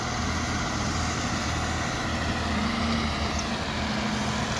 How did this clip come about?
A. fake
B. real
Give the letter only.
B